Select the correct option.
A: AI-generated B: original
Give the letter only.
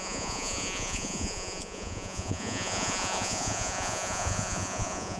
A